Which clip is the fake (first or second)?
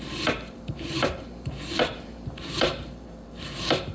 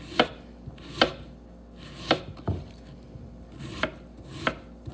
first